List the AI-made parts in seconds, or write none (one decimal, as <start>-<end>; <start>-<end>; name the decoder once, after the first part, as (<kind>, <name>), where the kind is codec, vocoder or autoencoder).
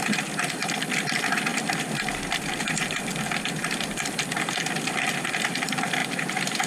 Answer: 6.0-6.7 (vocoder, BigVGAN v2)